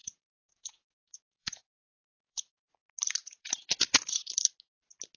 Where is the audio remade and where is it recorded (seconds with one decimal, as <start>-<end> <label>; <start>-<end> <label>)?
0.0-2.7 remade; 2.7-3.2 recorded; 3.2-4.3 remade; 4.3-5.2 recorded